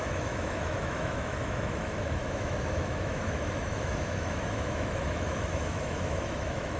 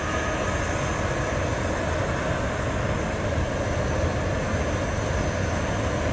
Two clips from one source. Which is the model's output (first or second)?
first